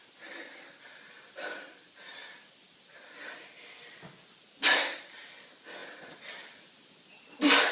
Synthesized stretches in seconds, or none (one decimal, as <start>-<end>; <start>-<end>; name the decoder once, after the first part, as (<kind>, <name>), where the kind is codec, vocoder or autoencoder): none